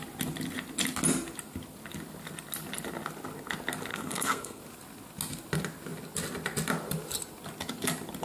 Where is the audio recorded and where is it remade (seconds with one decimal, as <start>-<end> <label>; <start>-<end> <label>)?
0.0-3.9 recorded; 3.9-4.6 remade; 4.6-8.2 recorded